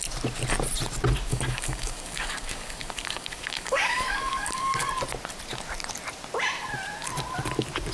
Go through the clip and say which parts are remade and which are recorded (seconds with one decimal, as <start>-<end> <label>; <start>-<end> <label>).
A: 0.0-1.3 recorded; 1.3-4.9 remade; 4.9-7.9 recorded